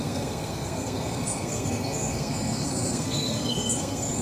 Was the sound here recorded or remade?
remade